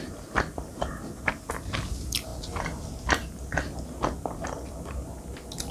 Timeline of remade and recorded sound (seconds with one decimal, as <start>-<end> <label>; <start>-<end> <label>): 0.0-0.7 recorded; 0.7-1.5 remade; 1.5-5.7 recorded